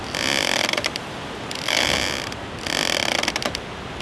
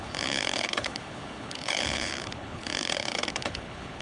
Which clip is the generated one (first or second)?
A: second